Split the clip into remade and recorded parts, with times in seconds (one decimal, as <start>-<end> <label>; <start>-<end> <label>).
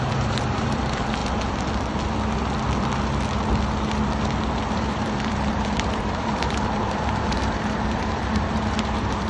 0.0-1.2 remade; 1.2-4.7 recorded; 4.7-9.3 remade